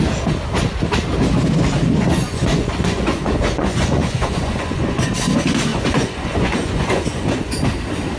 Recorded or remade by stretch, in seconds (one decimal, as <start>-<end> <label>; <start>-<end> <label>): 0.0-2.1 recorded; 2.1-5.1 remade; 5.1-5.7 recorded; 5.7-7.6 remade; 7.6-8.2 recorded